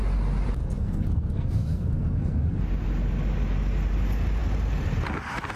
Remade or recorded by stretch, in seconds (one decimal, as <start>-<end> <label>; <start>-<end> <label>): 0.0-0.6 recorded; 0.6-2.6 remade; 2.6-5.6 recorded